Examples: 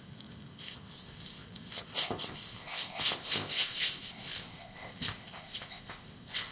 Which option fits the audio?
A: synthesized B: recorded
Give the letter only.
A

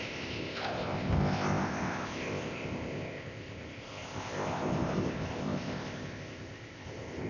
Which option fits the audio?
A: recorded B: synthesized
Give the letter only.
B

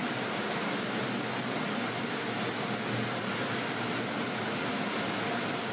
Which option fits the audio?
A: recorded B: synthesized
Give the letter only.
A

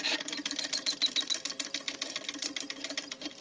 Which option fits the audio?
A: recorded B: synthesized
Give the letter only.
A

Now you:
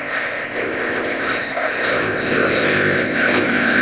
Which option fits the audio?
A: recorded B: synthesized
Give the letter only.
B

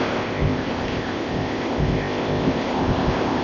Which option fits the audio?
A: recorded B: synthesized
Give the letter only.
B